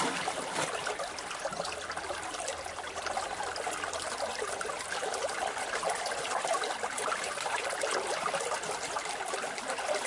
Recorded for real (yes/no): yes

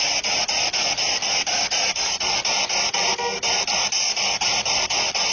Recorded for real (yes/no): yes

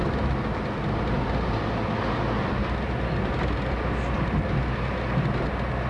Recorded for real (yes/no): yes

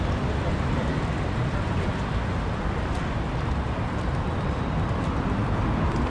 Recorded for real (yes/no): yes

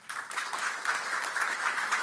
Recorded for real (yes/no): no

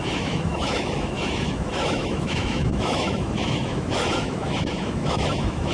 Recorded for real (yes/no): no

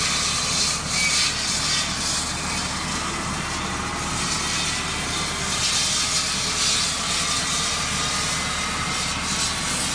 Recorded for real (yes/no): yes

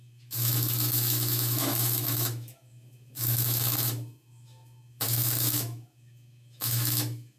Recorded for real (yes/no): no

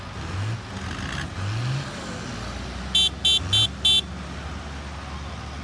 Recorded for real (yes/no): yes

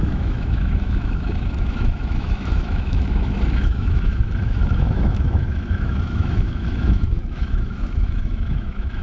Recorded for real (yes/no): no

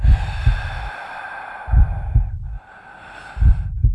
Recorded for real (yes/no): yes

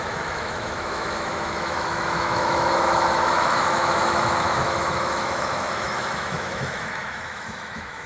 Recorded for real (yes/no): no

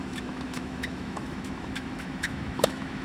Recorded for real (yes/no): no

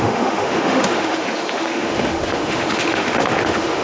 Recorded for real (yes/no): no